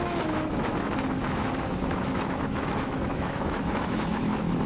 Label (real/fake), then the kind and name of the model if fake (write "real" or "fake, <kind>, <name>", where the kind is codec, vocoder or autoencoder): fake, autoencoder, DAC-VAE